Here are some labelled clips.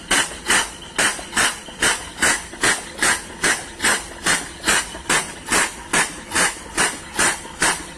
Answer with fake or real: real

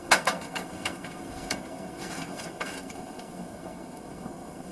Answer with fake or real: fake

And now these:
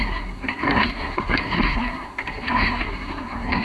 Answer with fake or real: fake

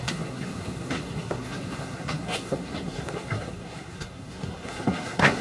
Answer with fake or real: fake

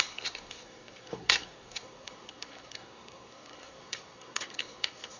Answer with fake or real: fake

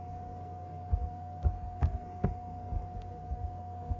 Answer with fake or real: fake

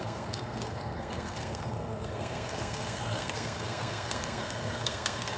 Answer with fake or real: fake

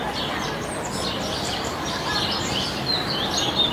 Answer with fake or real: real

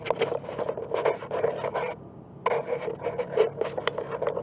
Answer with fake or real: real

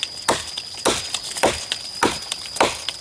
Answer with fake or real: real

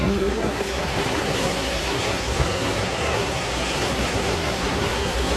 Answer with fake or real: fake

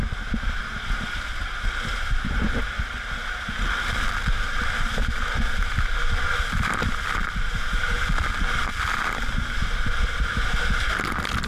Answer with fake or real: real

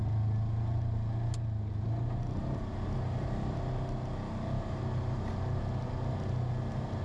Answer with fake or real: real